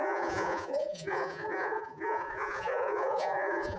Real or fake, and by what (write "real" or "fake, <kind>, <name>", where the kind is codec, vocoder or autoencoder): fake, vocoder, Vocos